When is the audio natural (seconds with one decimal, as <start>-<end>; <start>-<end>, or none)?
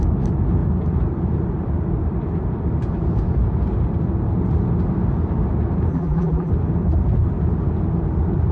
0.0-5.9; 6.5-8.5